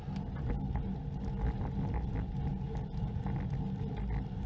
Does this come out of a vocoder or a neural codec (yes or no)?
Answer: no